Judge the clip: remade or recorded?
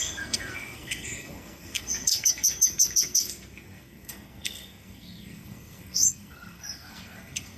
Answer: remade